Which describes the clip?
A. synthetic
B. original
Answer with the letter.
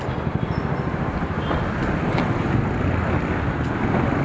B